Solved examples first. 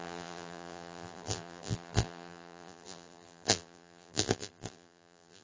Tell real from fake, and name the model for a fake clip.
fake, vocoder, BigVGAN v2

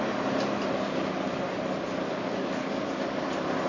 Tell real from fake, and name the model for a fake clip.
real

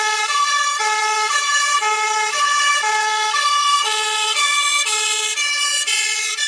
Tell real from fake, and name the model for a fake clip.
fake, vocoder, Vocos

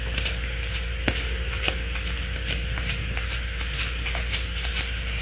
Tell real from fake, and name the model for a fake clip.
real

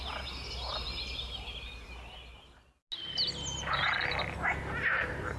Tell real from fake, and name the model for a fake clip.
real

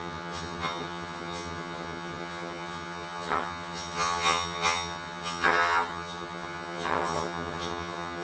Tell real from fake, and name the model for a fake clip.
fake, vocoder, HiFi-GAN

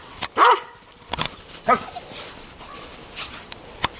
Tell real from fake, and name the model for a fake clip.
fake, vocoder, BigVGAN v2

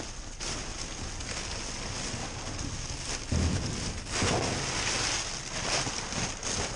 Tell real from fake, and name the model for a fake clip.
real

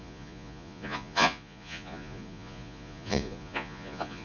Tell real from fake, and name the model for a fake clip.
fake, vocoder, Vocos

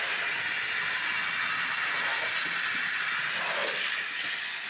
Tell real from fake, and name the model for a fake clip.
real